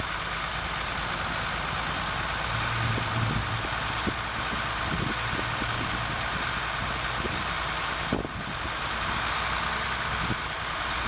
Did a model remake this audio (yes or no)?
no